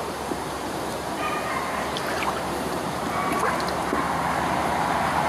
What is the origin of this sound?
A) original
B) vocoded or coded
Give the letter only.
B